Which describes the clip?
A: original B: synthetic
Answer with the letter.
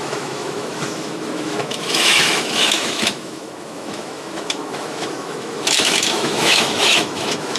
B